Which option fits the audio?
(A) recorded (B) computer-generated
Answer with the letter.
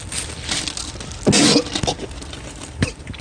A